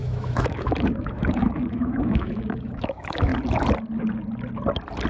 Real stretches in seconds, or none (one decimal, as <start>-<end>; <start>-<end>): 3.3-5.1